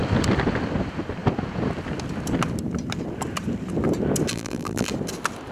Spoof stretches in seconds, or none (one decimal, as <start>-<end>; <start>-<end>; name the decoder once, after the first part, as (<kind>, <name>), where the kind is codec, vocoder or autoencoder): 4.3-4.9 (vocoder, BigVGAN v2)